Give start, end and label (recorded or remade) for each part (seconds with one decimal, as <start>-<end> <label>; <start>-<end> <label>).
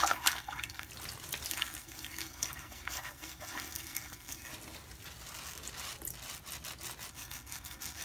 0.0-0.9 remade; 0.9-1.5 recorded; 1.5-4.5 remade; 4.5-7.1 recorded; 7.1-8.0 remade